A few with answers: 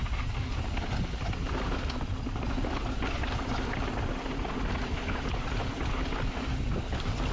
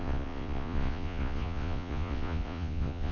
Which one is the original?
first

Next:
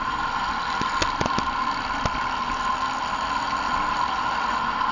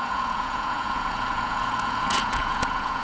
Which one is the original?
first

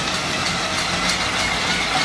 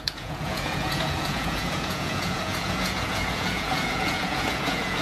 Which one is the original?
first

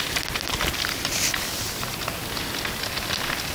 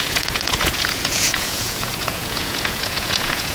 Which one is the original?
first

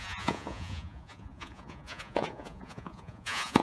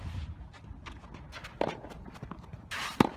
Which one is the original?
second